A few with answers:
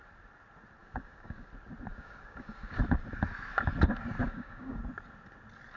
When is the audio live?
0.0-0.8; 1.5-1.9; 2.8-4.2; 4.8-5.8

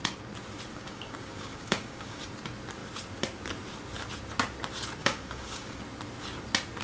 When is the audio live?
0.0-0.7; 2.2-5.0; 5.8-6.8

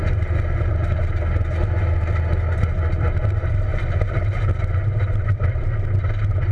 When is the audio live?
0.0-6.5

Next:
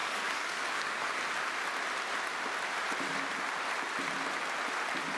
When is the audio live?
1.2-5.2